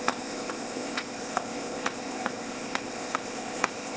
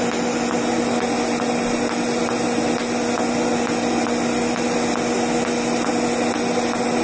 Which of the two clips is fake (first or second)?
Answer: first